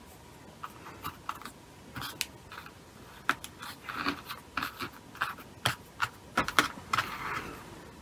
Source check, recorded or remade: recorded